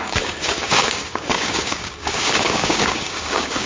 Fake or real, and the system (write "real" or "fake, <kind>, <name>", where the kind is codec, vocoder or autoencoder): fake, codec, DAC